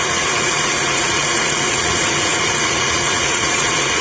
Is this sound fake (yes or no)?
yes